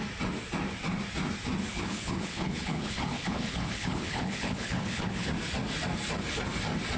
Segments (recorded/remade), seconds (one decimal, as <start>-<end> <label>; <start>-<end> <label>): 0.0-1.7 recorded; 1.7-5.3 remade; 5.3-7.0 recorded